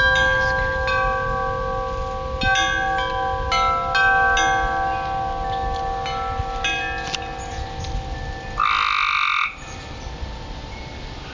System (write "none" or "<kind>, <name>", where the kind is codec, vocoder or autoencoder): none